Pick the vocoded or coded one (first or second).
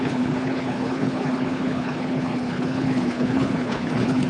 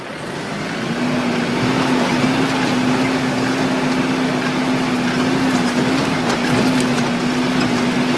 first